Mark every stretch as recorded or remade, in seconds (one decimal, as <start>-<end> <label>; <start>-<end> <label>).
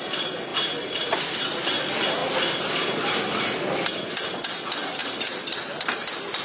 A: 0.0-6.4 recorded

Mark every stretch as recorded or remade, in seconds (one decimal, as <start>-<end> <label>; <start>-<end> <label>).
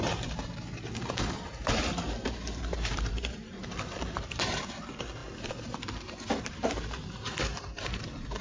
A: 0.0-8.4 remade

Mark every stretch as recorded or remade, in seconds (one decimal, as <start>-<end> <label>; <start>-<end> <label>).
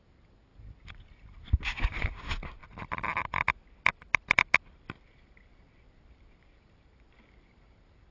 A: 0.0-0.5 recorded; 0.5-2.0 remade; 2.0-2.6 recorded; 2.6-7.5 remade; 7.5-8.1 recorded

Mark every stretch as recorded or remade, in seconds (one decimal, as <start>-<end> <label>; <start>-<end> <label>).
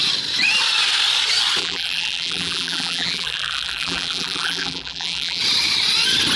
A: 0.0-1.6 recorded; 1.6-5.4 remade; 5.4-6.4 recorded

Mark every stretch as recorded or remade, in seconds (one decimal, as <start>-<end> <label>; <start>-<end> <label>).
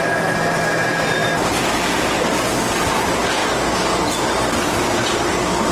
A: 0.0-5.7 recorded